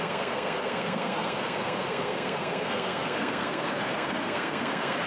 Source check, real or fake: fake